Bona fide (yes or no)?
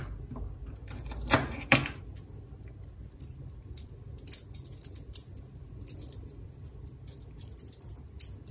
yes